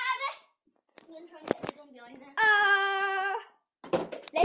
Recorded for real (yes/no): yes